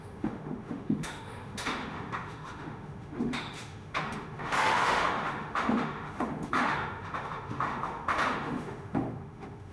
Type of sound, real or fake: fake